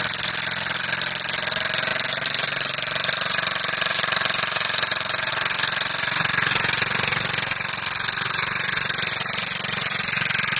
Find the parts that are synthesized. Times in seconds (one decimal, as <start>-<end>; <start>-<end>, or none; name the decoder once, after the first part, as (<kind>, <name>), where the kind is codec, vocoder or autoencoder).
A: none